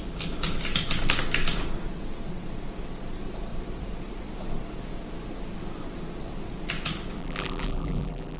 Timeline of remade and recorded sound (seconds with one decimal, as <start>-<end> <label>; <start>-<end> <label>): 0.0-7.2 recorded; 7.2-8.4 remade